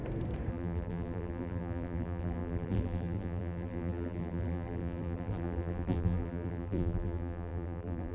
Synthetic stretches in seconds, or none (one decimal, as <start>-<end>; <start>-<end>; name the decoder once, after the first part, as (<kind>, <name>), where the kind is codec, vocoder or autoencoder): 0.5-8.1 (vocoder, BigVGAN v2)